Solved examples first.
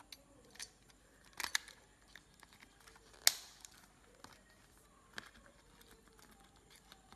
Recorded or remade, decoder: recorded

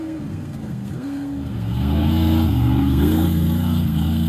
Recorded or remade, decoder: remade, codec, SNAC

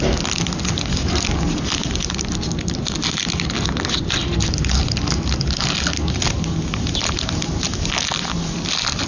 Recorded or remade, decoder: recorded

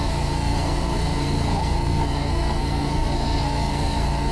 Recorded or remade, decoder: remade, codec, SNAC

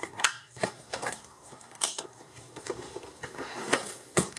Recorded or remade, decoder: remade, codec, SNAC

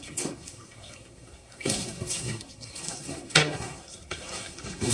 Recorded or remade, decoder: remade, codec, SNAC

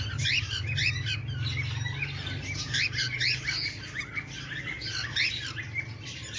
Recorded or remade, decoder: recorded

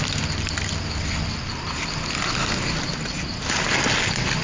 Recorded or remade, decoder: recorded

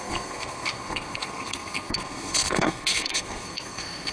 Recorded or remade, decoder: remade, codec, SNAC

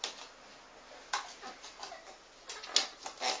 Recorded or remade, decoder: recorded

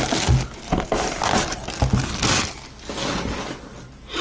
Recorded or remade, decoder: recorded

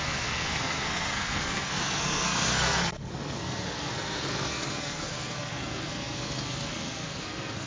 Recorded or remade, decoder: remade, codec, SNAC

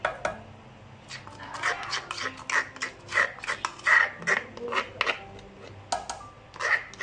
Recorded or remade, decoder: recorded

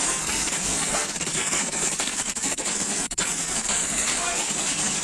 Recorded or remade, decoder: remade, codec, SNAC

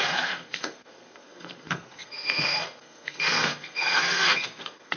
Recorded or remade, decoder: remade, codec, SNAC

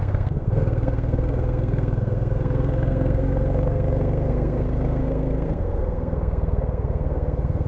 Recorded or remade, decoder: remade, codec, SNAC